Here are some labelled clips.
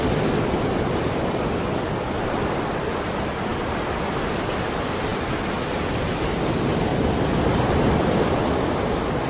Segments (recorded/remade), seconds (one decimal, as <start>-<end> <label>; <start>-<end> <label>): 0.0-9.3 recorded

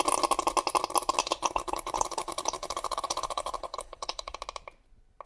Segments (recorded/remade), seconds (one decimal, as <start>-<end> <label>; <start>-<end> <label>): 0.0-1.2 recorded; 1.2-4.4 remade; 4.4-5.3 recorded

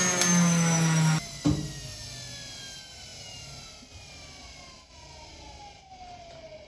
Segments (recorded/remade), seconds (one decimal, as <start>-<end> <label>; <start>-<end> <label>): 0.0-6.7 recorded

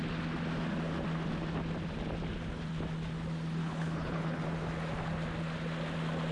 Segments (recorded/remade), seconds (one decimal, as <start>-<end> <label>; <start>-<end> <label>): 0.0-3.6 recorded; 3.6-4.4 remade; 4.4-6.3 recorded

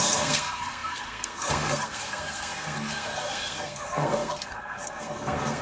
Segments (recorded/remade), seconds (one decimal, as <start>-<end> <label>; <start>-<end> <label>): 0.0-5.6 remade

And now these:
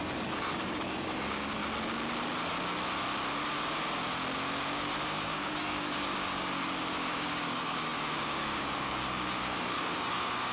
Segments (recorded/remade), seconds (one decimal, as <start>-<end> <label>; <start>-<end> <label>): 0.0-1.6 remade; 1.6-5.2 recorded; 5.2-10.5 remade

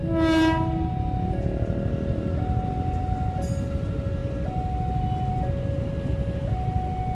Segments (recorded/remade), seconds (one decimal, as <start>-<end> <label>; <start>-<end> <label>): 0.0-7.1 recorded